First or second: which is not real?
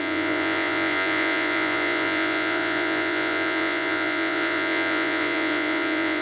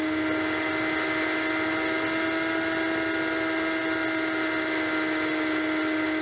first